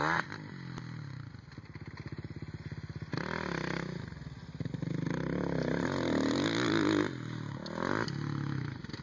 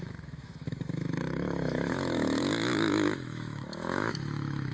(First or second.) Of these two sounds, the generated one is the second